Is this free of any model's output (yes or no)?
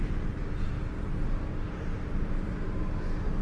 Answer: yes